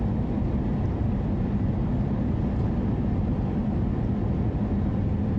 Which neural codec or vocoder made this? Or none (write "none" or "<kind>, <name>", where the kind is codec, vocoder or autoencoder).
none